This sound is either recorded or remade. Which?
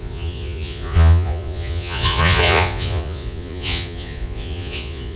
remade